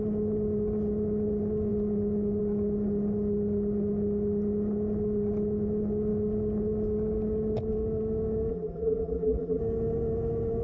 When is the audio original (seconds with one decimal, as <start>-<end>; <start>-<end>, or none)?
0.0-8.5; 9.6-10.6

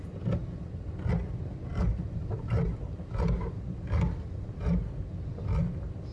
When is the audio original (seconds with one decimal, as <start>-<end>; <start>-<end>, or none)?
0.0-1.8; 4.9-6.1

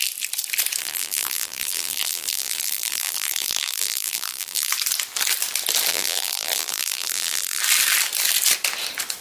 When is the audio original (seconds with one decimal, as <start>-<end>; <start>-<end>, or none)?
0.0-0.8; 4.7-5.9; 7.6-9.2

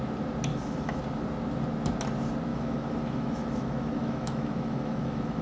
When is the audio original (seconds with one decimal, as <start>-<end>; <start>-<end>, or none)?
0.0-0.5; 1.0-2.5

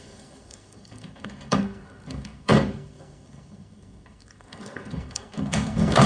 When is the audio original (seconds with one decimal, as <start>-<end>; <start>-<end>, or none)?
none

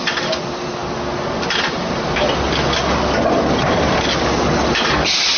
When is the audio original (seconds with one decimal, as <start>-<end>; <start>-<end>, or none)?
0.0-5.4

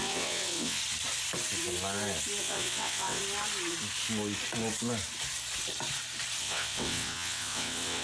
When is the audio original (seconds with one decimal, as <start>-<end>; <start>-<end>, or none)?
0.8-2.4; 3.2-6.4

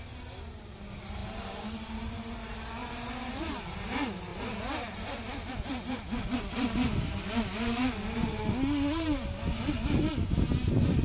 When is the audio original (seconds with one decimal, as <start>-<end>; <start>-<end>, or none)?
0.0-1.2; 2.3-2.8; 3.6-4.3; 5.5-11.0